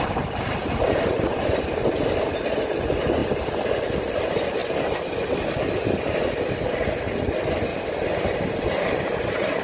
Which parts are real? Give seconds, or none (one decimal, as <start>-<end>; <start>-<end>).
0.0-7.7